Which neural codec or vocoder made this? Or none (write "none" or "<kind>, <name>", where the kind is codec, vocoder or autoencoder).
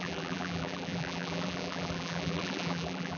vocoder, BigVGAN v2